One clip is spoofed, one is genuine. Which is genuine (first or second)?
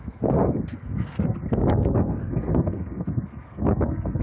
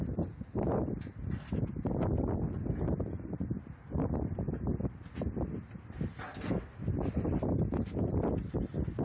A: second